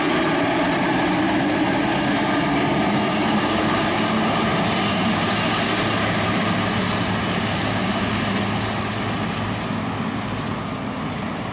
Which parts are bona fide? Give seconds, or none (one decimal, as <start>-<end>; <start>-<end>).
0.0-3.1; 3.9-11.5